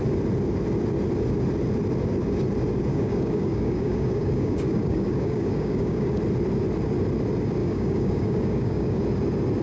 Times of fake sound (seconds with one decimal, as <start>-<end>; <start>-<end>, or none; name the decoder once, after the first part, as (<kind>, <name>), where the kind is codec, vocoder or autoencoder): 2.9-6.2 (codec, DAC); 7.6-9.0

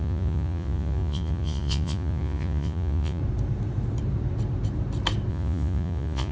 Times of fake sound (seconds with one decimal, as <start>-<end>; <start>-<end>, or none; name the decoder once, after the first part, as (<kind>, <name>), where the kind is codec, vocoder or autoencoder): 0.0-3.2 (vocoder, Vocos); 5.3-6.3

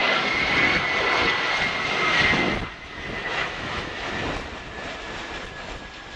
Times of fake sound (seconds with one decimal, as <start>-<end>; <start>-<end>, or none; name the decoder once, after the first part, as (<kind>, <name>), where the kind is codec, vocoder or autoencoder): 3.4-4.1 (autoencoder, DAC-VAE)

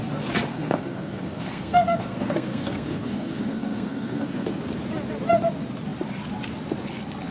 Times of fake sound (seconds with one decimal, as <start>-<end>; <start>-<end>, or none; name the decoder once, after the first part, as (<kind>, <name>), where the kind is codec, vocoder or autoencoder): 0.5-4.6 (codec, SNAC)

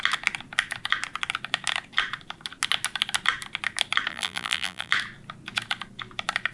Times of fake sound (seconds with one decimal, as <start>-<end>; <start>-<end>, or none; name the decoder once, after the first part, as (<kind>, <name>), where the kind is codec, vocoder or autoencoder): 4.1-4.9 (vocoder, BigVGAN v2)

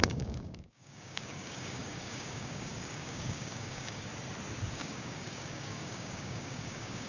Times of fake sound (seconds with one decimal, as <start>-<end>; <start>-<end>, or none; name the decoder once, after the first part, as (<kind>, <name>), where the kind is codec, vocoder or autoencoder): 0.0-4.1 (codec, DAC); 4.7-7.1

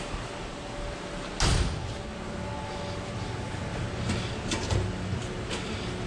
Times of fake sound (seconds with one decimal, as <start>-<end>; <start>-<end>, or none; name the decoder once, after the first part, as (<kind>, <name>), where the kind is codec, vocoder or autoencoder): none